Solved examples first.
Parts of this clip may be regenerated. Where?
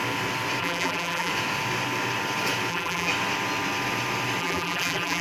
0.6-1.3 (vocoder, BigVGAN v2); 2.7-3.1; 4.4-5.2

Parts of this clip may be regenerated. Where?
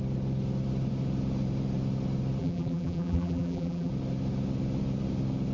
2.4-3.9 (vocoder, BigVGAN v2)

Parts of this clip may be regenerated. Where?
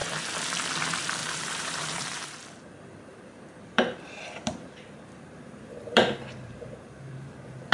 1.2-2.3 (vocoder, BigVGAN v2); 3.1-7.7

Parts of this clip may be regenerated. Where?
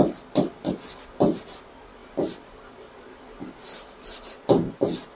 3.7-5.1 (vocoder, BigVGAN v2)